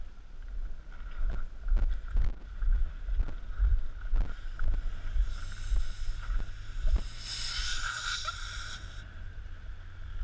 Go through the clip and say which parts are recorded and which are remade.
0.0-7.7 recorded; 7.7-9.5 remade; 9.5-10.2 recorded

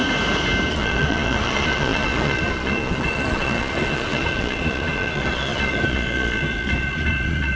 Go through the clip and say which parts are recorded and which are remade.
0.0-0.7 recorded; 0.7-7.6 remade

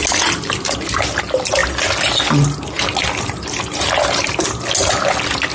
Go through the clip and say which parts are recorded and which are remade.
0.0-5.5 recorded

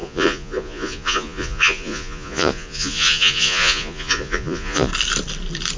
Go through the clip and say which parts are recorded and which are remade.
0.0-4.9 remade; 4.9-5.8 recorded

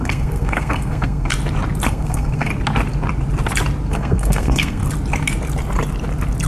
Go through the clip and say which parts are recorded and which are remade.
0.0-1.3 remade; 1.3-1.9 recorded; 1.9-2.5 remade; 2.5-3.9 recorded; 3.9-4.8 remade; 4.8-6.5 recorded

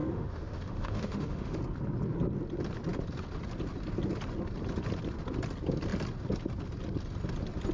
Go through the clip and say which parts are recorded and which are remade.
0.0-1.6 remade; 1.6-7.7 recorded